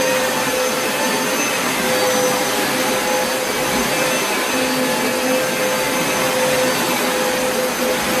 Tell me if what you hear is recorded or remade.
recorded